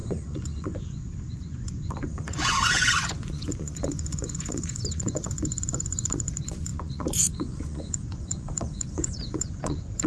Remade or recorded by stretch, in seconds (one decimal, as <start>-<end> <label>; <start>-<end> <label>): 0.0-10.1 remade